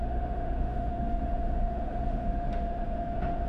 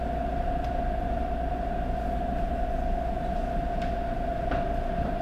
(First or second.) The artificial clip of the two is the first